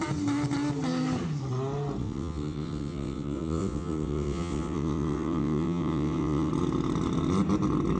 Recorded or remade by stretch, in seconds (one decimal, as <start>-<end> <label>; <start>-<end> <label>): 0.0-2.0 recorded; 2.0-6.5 remade; 6.5-8.0 recorded